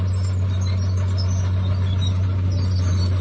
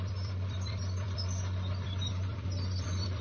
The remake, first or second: second